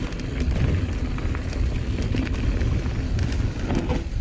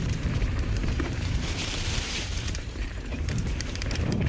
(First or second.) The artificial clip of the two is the second